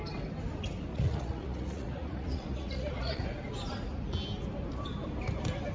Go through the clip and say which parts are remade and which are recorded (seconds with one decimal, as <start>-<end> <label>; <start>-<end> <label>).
0.0-0.9 recorded; 0.9-3.2 remade; 3.2-5.7 recorded